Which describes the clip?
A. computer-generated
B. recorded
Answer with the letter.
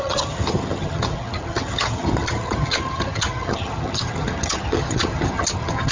A